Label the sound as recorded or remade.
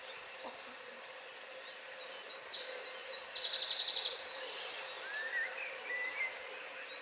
recorded